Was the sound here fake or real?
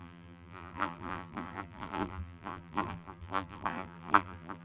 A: fake